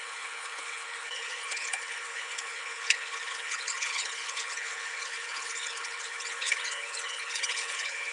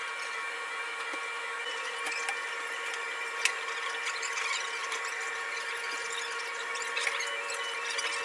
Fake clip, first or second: first